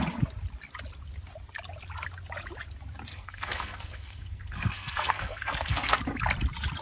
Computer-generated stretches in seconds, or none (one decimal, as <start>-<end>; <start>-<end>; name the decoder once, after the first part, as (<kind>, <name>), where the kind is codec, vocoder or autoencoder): 3.1-6.0 (codec, SNAC)

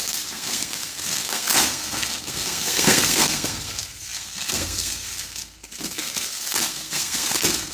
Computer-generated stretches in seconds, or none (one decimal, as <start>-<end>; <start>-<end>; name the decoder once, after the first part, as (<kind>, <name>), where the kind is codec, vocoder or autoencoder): 0.0-7.7 (codec, SNAC)

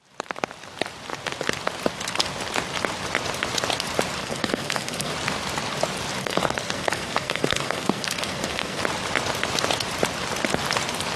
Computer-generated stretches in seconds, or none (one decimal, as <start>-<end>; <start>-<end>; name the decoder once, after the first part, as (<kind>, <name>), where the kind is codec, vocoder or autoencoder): 4.2-5.1 (codec, SNAC); 6.2-8.8

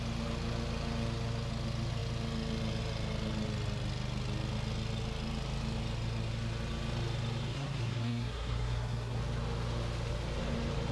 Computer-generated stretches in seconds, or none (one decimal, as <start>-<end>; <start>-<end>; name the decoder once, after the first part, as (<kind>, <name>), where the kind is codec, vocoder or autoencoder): 7.5-9.2 (codec, SNAC)

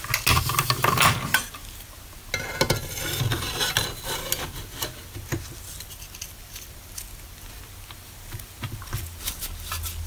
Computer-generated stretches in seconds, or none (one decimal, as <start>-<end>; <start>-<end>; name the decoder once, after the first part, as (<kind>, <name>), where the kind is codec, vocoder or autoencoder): none